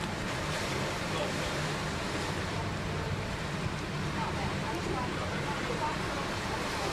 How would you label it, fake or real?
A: fake